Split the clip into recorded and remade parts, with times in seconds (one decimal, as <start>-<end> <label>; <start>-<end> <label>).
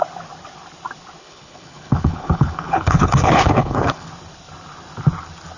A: 0.0-1.2 recorded; 1.2-4.1 remade; 4.1-5.6 recorded